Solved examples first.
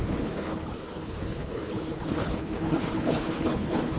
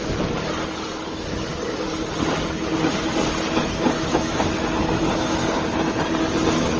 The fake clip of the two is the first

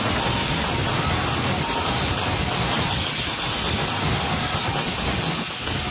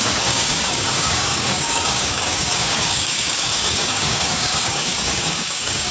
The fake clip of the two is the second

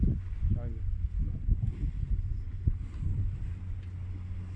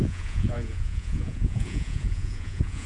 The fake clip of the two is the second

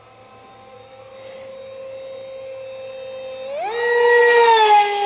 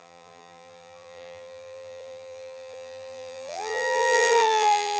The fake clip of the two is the second